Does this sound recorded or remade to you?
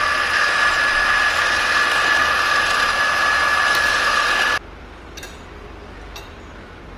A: recorded